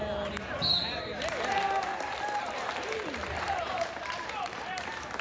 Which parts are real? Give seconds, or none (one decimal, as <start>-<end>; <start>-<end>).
0.0-0.7; 1.5-1.9